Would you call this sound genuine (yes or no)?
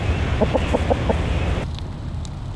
yes